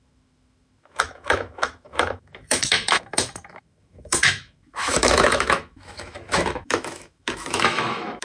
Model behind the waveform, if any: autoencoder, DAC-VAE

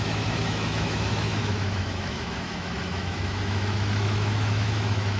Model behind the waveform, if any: autoencoder, DAC-VAE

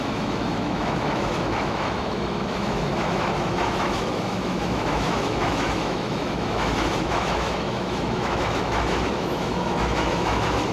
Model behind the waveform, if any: autoencoder, DAC-VAE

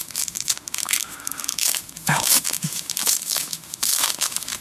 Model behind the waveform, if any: autoencoder, DAC-VAE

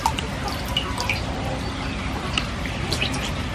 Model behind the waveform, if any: none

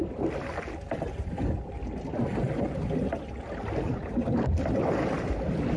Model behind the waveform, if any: none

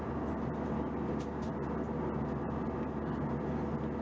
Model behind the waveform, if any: none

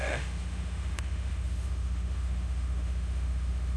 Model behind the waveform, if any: autoencoder, DAC-VAE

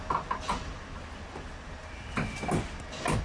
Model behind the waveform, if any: none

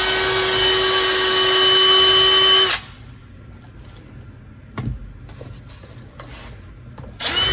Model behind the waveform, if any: none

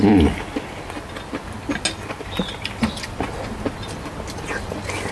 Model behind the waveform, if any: none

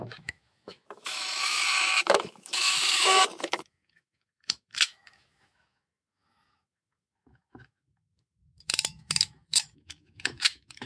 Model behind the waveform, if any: autoencoder, DAC-VAE